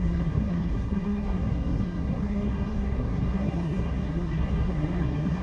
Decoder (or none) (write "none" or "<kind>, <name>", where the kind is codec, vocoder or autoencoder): codec, SNAC